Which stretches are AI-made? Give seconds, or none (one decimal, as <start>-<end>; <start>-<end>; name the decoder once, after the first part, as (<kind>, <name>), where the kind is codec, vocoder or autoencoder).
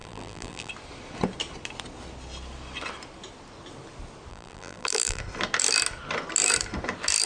0.0-0.7 (vocoder, BigVGAN v2); 4.3-5.2